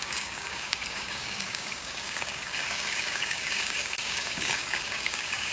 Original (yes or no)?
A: no